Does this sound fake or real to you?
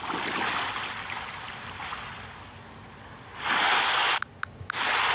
real